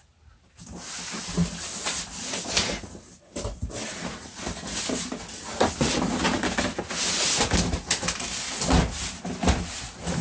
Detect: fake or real real